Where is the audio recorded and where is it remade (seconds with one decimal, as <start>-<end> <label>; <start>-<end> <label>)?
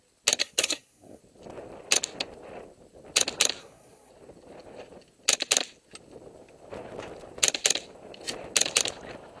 0.0-0.4 recorded; 0.4-1.2 remade; 1.2-3.6 recorded; 3.6-4.1 remade; 4.1-9.4 recorded